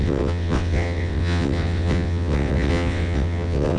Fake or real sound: fake